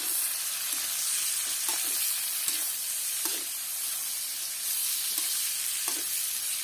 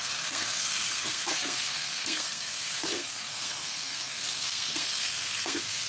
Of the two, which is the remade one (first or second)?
second